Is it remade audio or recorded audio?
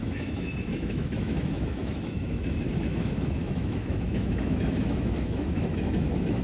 remade